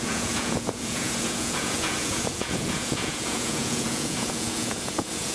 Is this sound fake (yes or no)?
yes